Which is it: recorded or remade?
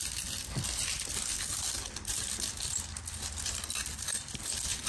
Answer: recorded